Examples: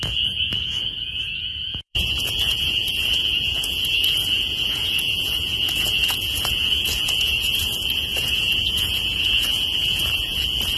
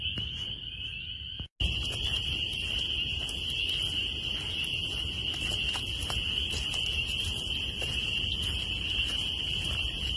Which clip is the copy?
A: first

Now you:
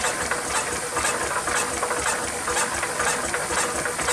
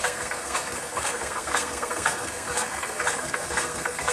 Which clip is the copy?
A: second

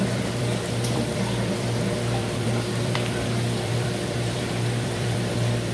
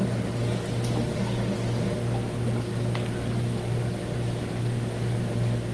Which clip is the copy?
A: first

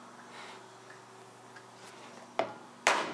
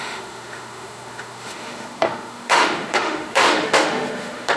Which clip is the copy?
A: second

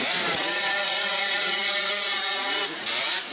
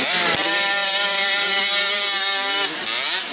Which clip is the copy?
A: first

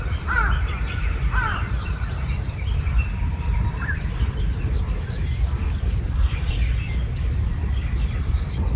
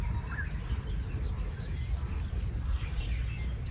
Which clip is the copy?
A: first